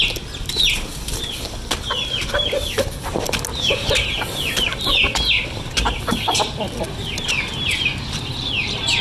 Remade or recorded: recorded